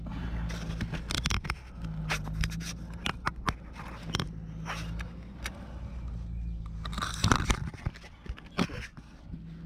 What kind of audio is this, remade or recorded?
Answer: recorded